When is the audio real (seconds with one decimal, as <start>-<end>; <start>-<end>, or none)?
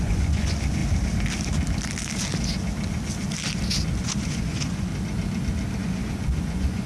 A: 0.8-4.0; 4.9-5.8